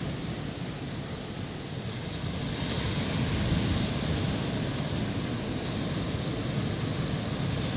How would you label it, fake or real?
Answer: real